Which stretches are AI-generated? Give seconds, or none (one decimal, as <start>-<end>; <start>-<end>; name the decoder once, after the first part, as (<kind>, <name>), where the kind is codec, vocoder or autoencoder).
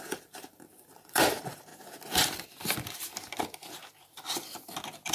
0.0-1.7 (vocoder, BigVGAN v2)